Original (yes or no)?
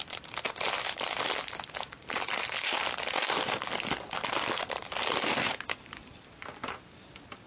yes